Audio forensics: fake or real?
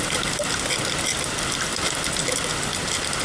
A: real